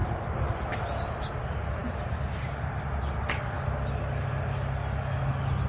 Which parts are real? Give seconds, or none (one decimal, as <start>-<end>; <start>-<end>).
0.0-5.7